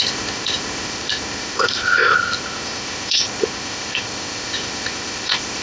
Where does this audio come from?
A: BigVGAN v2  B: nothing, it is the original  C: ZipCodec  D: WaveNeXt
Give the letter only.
C